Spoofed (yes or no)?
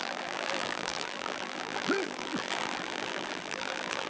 yes